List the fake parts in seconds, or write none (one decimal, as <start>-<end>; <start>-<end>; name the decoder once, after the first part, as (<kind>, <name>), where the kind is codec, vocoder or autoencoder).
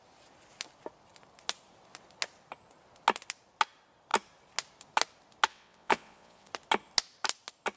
5.5-6.5 (vocoder, WaveNeXt)